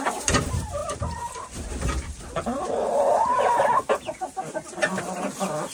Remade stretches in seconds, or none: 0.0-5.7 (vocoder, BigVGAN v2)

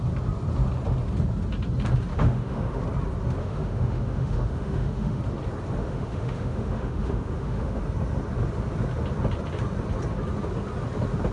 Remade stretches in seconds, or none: 2.1-2.8 (autoencoder, DAC-VAE); 3.4-5.2; 5.8-7.8

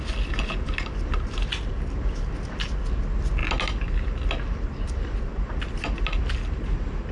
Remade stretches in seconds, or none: none